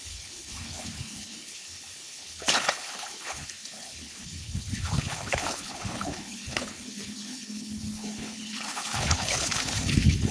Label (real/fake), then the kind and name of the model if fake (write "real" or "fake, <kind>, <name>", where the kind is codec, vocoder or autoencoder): fake, codec, HILCodec